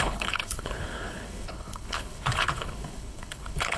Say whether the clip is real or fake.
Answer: fake